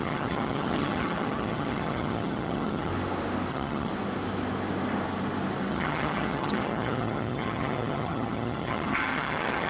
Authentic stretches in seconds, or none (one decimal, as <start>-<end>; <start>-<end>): 2.9-3.5; 3.9-5.7